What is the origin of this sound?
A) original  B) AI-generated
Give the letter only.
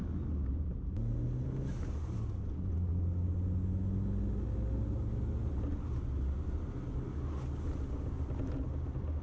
A